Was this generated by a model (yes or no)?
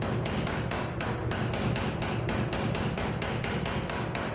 no